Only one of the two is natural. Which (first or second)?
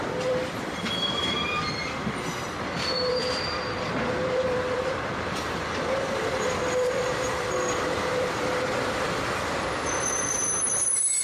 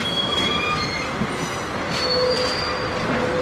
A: second